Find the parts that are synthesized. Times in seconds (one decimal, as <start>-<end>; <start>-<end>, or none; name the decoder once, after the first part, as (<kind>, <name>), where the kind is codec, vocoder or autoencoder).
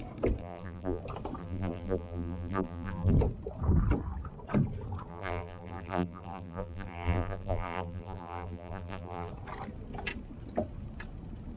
0.4-1.0 (vocoder, BigVGAN v2); 1.4-3.1; 5.1-9.3